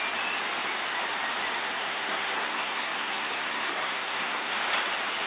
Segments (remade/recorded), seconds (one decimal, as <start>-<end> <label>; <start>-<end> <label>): 0.0-1.6 recorded; 1.6-4.5 remade; 4.5-5.3 recorded